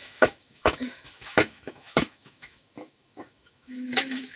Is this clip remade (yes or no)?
yes